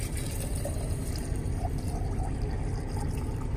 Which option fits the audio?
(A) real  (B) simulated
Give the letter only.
B